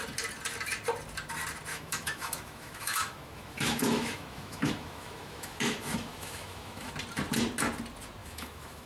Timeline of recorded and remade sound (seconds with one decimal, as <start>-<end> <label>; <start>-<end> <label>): 0.0-1.7 recorded; 1.7-6.9 remade; 6.9-8.2 recorded; 8.2-8.9 remade